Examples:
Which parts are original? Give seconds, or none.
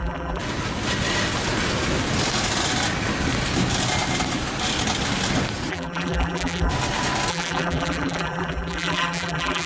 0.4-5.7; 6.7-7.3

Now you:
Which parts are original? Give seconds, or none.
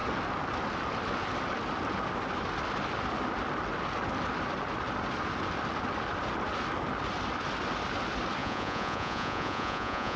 0.0-8.4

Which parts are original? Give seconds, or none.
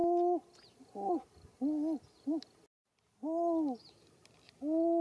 0.0-5.0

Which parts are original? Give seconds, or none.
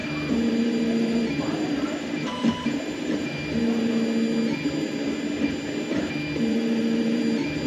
3.9-6.5; 7.2-7.7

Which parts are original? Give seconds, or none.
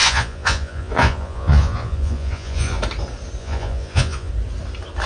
2.8-3.4; 4.3-5.1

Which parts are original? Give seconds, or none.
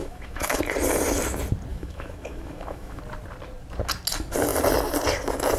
0.6-1.7; 3.0-5.6